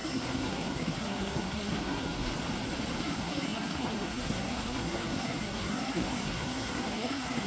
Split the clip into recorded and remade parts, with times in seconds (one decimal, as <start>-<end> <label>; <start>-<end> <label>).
0.0-2.3 remade; 2.3-3.0 recorded; 3.0-7.5 remade